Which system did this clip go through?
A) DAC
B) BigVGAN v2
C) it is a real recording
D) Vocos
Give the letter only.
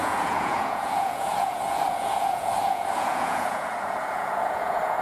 D